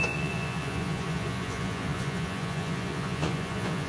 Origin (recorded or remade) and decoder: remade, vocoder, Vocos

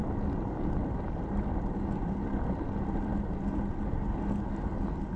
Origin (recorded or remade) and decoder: recorded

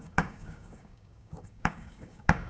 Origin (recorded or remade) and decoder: remade, codec, DAC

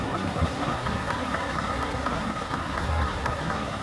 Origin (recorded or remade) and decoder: remade, codec, SNAC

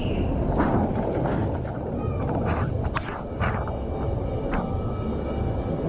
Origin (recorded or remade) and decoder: recorded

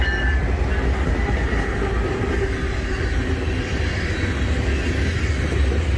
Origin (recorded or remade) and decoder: recorded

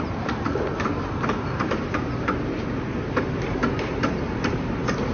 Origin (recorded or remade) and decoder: remade, vocoder, BigVGAN v2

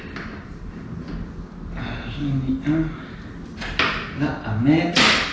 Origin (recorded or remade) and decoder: recorded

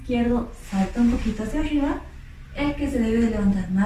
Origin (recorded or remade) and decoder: recorded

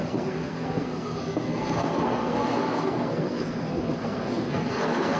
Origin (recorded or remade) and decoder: remade, codec, SNAC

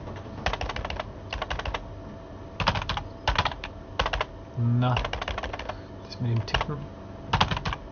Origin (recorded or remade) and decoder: recorded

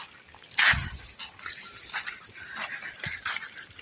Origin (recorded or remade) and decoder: recorded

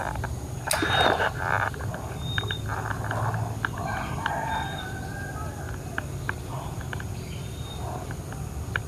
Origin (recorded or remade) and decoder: recorded